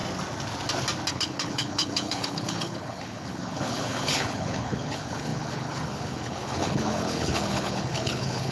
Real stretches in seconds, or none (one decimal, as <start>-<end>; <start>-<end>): 0.0-1.1